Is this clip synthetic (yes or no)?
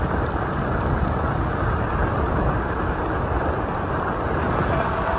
no